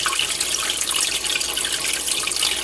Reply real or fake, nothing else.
real